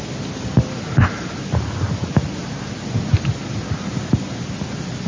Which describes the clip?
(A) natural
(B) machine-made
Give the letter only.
A